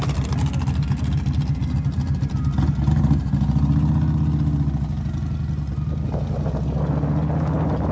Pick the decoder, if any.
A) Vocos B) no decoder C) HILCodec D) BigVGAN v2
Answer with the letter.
B